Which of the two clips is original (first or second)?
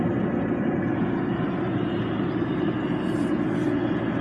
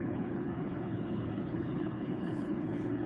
first